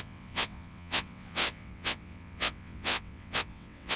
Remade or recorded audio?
remade